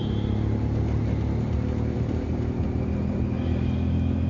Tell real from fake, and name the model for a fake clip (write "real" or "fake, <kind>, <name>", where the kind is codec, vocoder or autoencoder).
real